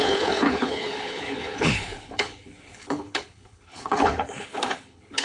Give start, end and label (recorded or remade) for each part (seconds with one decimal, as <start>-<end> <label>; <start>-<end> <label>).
0.0-5.2 remade